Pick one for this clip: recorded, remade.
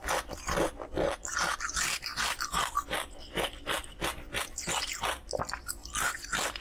recorded